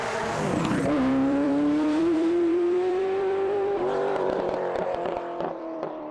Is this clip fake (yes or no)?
yes